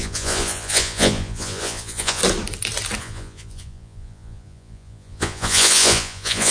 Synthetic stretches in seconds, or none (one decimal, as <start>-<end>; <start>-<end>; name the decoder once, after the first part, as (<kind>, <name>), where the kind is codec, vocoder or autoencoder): 0.0-2.2 (vocoder, Vocos); 3.0-6.5